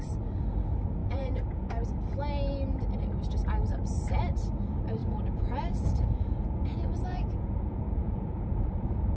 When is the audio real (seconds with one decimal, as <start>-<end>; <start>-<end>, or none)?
0.0-1.0; 1.7-5.0